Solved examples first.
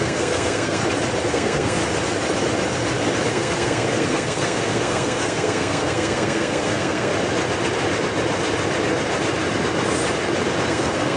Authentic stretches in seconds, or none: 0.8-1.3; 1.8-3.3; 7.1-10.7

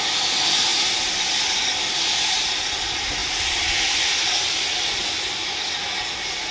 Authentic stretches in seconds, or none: 0.0-6.5

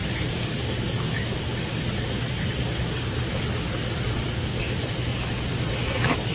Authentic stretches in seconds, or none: none

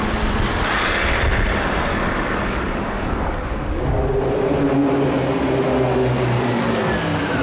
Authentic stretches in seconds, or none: 0.0-1.9; 3.9-6.0; 6.8-7.4

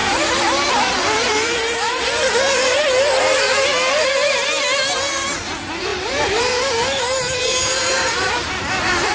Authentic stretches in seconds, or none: 3.2-5.9